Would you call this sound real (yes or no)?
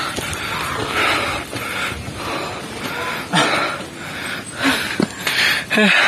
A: yes